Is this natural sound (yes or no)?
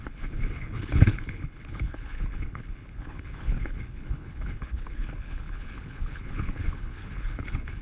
no